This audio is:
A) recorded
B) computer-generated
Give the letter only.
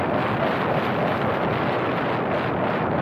A